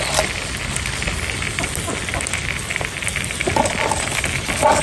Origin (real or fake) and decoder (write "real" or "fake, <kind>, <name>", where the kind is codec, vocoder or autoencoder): real